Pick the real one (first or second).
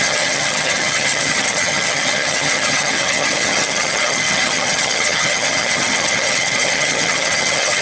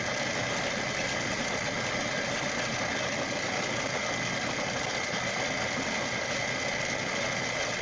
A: second